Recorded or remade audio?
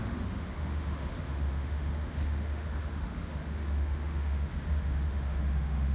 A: remade